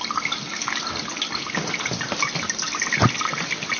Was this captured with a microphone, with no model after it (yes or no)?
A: yes